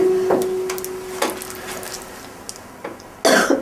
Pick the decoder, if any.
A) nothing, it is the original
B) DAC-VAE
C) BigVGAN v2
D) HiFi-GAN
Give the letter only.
A